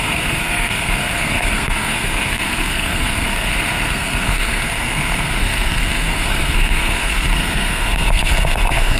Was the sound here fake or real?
fake